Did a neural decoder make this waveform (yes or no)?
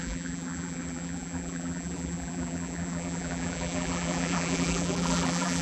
yes